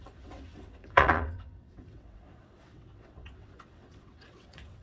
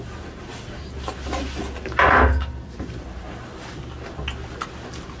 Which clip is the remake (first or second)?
first